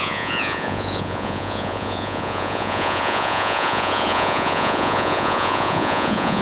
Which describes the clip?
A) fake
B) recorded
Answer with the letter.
A